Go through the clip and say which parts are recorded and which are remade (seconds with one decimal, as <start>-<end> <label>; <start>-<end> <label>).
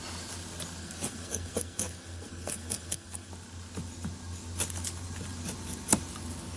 0.0-0.8 recorded; 0.8-3.3 remade; 3.3-6.6 recorded